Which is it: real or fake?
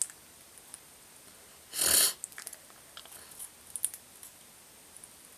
real